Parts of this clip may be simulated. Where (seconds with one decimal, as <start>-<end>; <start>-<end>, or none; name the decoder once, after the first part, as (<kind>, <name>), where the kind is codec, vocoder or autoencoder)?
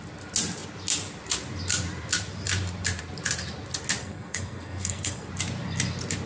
4.0-5.3 (codec, SNAC)